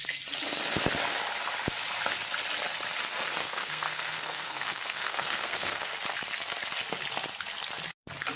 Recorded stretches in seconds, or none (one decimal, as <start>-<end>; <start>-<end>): 0.0-3.4; 5.9-8.4